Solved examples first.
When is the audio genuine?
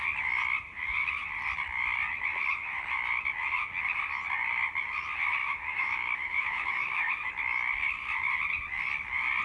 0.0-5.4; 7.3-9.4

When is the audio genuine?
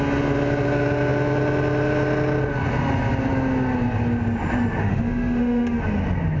0.0-4.8; 5.8-6.4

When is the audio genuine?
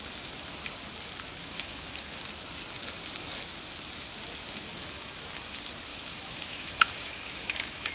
0.0-1.4; 2.2-4.7; 5.4-5.9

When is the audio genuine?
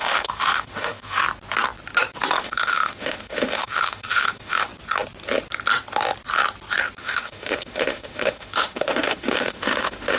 1.2-2.4; 4.6-7.0